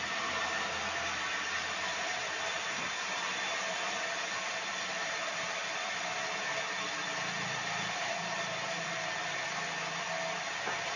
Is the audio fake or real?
fake